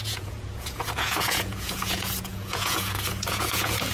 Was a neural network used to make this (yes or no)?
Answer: yes